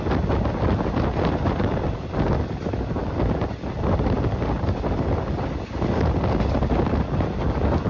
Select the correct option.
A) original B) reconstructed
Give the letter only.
A